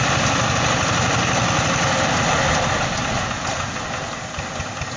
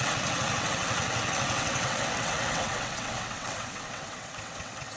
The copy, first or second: second